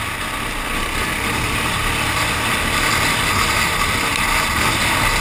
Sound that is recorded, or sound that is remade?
recorded